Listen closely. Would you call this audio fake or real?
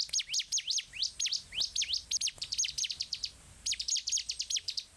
real